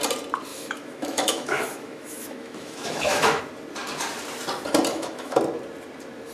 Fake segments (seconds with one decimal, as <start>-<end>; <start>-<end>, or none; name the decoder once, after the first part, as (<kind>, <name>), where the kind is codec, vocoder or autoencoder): 0.5-3.4 (autoencoder, DAC-VAE); 4.9-5.4